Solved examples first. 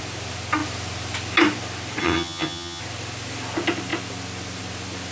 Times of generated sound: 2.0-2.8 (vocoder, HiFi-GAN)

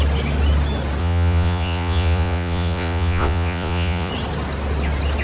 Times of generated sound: 1.0-4.1 (vocoder, Vocos)